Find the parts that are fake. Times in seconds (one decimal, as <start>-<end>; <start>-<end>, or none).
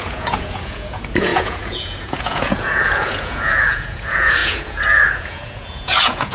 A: 0.0-6.3